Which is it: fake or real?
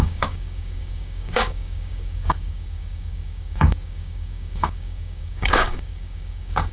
fake